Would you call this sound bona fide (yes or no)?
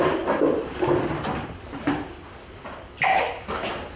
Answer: yes